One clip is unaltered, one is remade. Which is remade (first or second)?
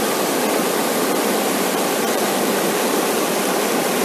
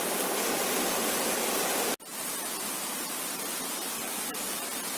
first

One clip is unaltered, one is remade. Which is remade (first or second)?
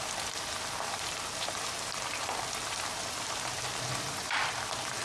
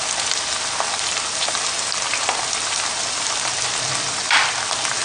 first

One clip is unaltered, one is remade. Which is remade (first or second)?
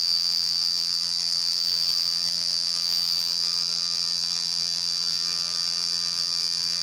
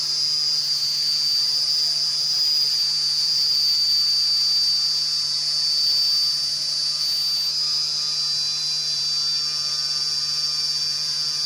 first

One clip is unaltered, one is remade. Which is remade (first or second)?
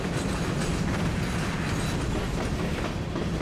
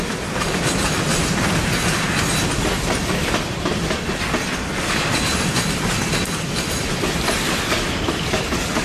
second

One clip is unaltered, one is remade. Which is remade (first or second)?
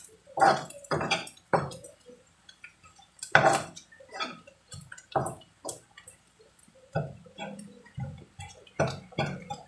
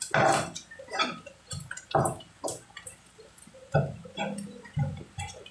first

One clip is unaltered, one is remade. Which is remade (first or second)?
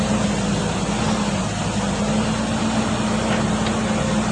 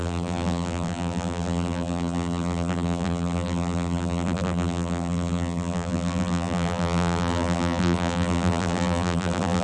second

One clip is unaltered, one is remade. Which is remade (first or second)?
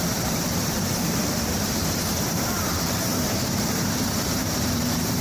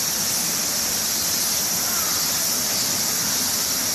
first